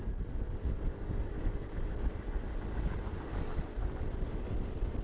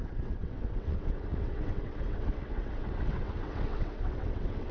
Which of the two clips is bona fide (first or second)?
first